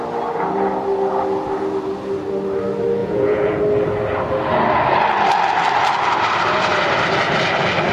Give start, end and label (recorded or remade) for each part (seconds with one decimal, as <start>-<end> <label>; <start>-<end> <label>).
0.0-3.0 recorded; 3.0-3.6 remade; 3.6-7.9 recorded